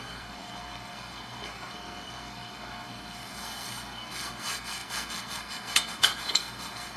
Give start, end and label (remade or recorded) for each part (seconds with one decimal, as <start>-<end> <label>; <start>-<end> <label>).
0.0-7.0 remade